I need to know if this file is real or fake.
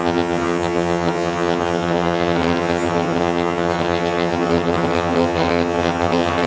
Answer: fake